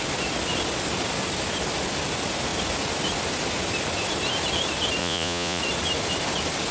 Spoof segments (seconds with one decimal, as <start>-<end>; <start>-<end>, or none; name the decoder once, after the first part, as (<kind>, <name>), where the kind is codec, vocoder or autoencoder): 5.0-5.6 (vocoder, Vocos)